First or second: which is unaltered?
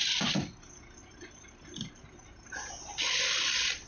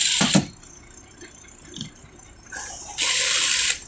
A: first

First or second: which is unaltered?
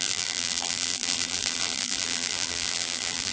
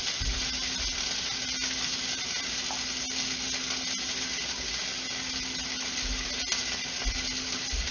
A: second